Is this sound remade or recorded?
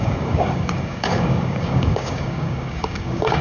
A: remade